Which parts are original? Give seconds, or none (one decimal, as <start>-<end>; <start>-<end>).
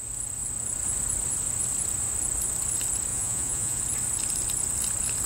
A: 0.0-3.1; 3.8-5.3